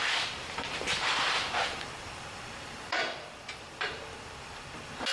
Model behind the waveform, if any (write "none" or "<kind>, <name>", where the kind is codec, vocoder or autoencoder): vocoder, BigVGAN v2